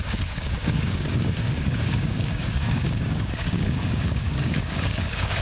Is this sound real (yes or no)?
no